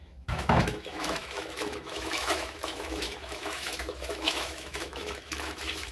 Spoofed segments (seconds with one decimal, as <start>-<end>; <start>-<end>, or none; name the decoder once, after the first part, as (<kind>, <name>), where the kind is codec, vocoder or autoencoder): 0.0-5.9 (autoencoder, DAC-VAE)